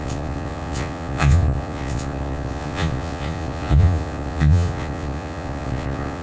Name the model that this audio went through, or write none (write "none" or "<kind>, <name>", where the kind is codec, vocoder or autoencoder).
vocoder, Vocos